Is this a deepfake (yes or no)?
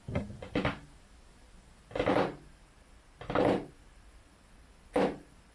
no